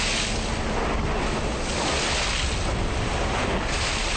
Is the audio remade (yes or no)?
no